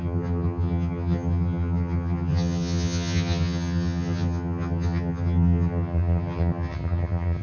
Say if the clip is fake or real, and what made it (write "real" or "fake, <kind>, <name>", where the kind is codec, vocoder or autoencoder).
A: fake, vocoder, HiFi-GAN